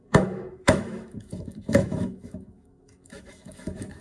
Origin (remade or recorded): remade